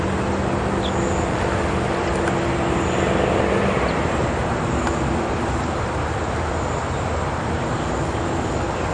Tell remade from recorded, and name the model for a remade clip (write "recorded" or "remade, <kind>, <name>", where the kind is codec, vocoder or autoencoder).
recorded